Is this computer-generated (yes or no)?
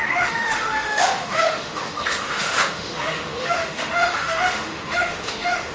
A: yes